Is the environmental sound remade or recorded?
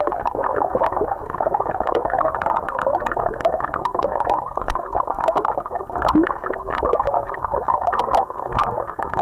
remade